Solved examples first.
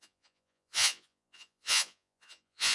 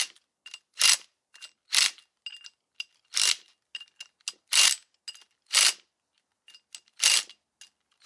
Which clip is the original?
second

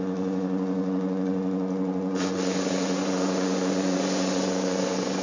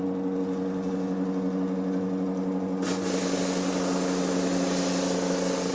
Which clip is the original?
second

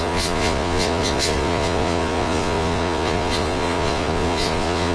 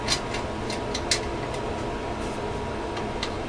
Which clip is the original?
second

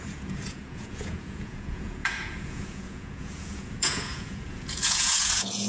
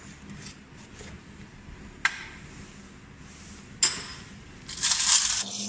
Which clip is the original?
second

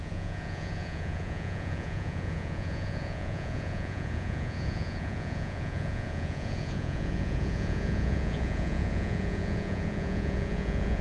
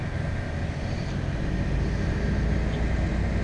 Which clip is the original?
second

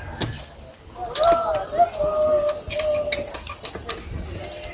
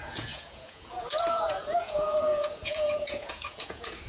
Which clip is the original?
first